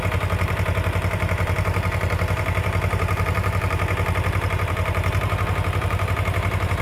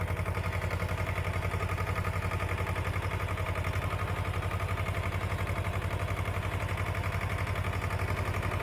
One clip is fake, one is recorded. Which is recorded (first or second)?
second